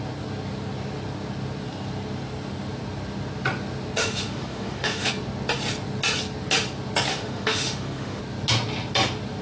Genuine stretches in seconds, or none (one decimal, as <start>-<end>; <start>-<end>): 0.0-4.0; 5.1-7.1; 8.2-9.4